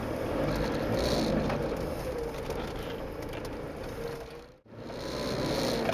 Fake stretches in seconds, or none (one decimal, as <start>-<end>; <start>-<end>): none